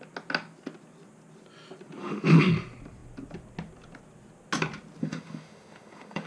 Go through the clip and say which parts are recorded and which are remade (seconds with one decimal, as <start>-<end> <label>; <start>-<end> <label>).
0.0-2.0 recorded; 2.0-2.5 remade; 2.5-5.0 recorded; 5.0-6.3 remade